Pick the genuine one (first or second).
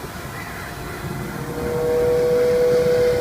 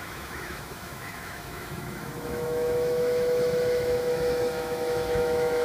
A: first